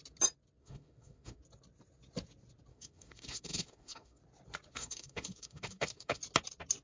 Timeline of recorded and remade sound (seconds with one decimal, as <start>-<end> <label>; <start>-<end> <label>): 0.0-0.6 recorded; 0.6-1.4 remade; 1.4-2.7 recorded; 2.7-4.2 remade; 4.2-4.7 recorded; 4.7-6.2 remade; 6.2-6.8 recorded